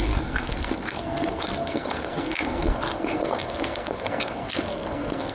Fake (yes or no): yes